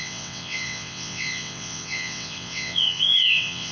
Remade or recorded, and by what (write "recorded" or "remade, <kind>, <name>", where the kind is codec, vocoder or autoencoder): remade, vocoder, WaveNeXt